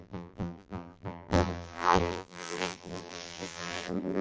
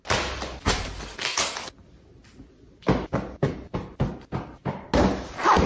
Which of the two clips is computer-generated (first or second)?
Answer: first